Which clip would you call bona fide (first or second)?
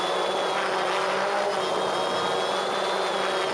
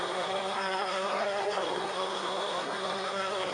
first